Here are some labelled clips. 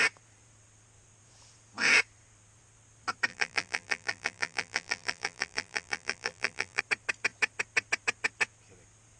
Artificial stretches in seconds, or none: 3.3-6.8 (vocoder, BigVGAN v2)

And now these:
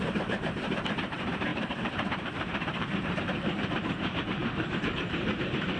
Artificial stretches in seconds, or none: 0.0-4.4 (vocoder, BigVGAN v2); 5.0-5.8

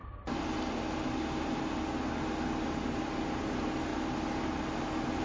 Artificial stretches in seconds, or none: none

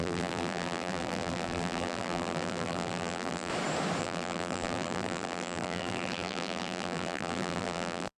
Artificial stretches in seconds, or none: 0.0-3.5 (vocoder, BigVGAN v2); 4.0-8.2